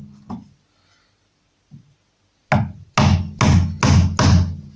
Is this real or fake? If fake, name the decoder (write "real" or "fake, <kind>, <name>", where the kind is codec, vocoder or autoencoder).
real